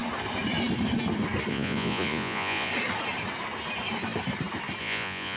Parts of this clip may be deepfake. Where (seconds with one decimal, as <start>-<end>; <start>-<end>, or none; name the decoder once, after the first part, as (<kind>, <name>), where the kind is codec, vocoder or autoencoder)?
1.5-2.7 (vocoder, Vocos); 4.8-5.4